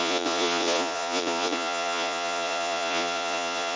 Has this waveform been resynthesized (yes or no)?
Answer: yes